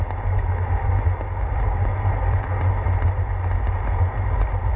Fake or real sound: real